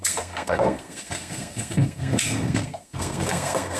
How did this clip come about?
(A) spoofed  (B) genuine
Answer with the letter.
A